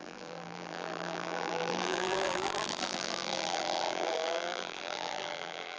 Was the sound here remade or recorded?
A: remade